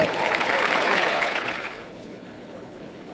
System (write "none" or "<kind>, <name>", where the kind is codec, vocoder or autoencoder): codec, HILCodec